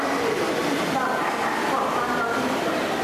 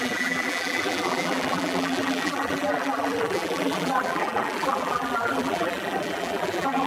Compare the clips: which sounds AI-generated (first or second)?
second